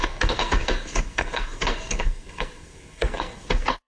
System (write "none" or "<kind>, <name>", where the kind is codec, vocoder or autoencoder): codec, SNAC